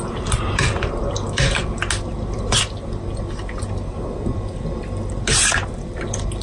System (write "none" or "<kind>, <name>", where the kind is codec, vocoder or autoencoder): none